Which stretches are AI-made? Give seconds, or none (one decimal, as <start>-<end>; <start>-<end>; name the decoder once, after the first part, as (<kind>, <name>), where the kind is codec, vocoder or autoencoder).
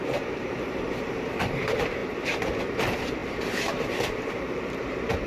0.0-5.3 (vocoder, BigVGAN v2)